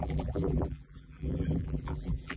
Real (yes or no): no